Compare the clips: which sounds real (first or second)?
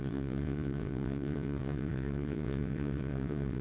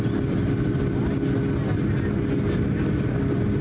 second